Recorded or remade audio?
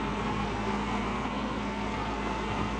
remade